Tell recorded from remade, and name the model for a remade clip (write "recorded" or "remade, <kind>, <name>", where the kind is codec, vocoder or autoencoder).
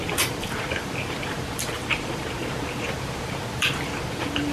remade, vocoder, BigVGAN v2